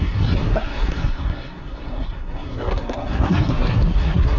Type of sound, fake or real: fake